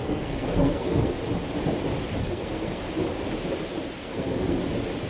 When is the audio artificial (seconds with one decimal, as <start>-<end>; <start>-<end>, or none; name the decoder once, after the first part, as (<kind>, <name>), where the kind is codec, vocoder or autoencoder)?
0.0-1.1 (codec, SNAC); 2.2-2.8; 4.0-4.6